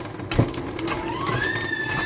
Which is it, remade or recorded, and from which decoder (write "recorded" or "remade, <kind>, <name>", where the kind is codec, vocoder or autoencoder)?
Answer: recorded